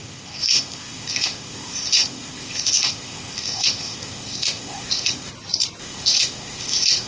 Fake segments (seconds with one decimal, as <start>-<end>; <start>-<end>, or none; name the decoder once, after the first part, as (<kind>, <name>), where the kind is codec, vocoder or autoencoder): 0.0-5.3 (codec, ZipCodec); 5.8-7.1